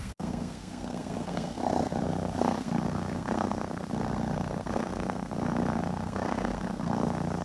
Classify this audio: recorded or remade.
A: remade